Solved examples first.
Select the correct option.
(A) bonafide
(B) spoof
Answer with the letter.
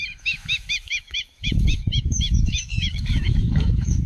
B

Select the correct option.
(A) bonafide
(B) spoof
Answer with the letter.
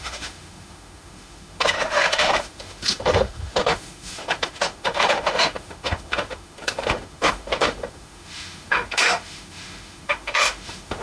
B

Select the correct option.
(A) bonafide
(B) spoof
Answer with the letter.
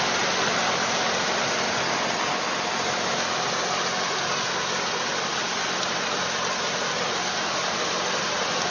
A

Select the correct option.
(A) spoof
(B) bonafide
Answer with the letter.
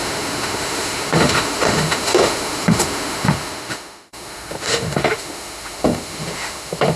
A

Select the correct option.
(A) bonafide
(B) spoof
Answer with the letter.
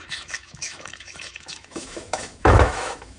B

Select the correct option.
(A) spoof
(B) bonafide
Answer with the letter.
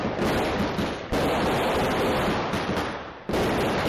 B